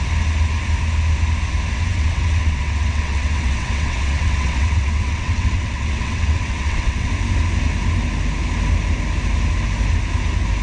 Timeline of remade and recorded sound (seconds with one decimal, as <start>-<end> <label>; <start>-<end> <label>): 0.0-1.9 recorded; 1.9-7.1 remade; 7.1-10.6 recorded

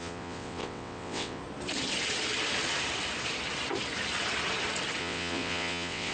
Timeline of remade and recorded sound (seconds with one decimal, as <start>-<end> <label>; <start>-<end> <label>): 0.0-1.4 remade; 1.4-5.0 recorded; 5.0-6.1 remade

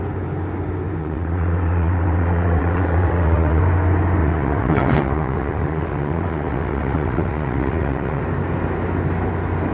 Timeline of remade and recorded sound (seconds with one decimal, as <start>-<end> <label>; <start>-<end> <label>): 0.0-1.0 recorded; 1.0-3.6 remade; 3.6-4.2 recorded; 4.2-8.2 remade; 8.2-9.7 recorded

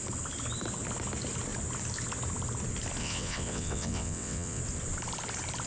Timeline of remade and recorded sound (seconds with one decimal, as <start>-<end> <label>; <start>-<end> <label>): 0.0-3.0 recorded; 3.0-4.6 remade; 4.6-5.7 recorded

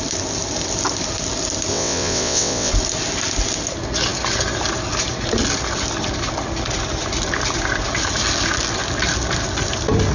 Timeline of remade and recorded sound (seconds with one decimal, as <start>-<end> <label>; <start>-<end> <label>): 0.0-1.7 recorded; 1.7-2.7 remade; 2.7-10.1 recorded

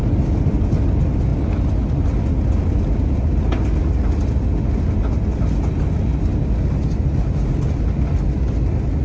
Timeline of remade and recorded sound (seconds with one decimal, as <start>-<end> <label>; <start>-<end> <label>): 0.0-9.0 recorded

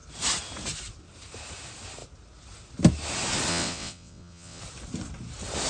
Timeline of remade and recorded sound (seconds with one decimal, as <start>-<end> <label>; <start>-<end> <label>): 0.0-3.5 recorded; 3.5-4.6 remade; 4.6-5.7 recorded